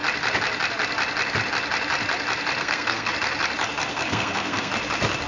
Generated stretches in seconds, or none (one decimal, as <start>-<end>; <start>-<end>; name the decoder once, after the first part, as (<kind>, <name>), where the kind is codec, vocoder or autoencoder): 2.6-3.1 (codec, SNAC); 3.9-4.7